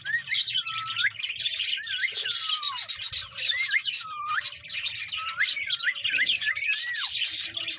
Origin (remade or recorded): recorded